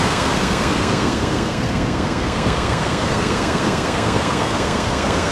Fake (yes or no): yes